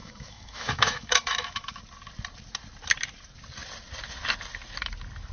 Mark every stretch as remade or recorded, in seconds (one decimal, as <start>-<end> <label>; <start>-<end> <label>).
0.0-1.8 remade; 1.8-5.3 recorded